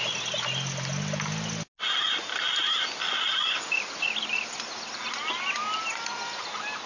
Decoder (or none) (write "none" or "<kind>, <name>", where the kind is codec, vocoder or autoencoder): none